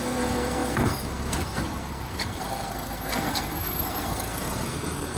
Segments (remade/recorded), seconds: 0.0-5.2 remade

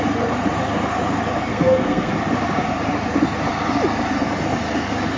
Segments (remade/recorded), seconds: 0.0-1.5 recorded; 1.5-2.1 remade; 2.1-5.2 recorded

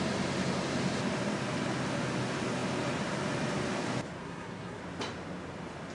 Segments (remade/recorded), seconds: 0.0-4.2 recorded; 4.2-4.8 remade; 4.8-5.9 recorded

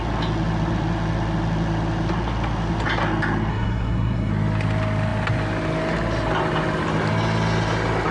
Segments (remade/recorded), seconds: 0.0-3.5 recorded; 3.5-4.3 remade; 4.3-8.1 recorded

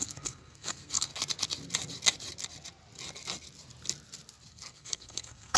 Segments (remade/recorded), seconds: 0.0-1.1 remade; 1.1-4.5 recorded; 4.5-5.6 remade